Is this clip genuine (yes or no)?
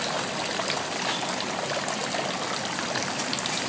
yes